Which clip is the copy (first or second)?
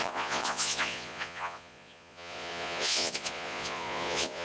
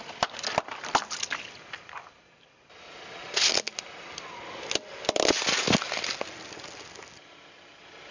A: first